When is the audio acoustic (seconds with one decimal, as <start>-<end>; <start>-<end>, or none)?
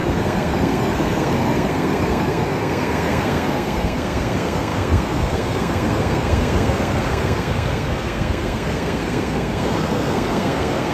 none